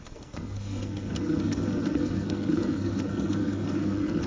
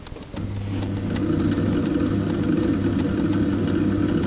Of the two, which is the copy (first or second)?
first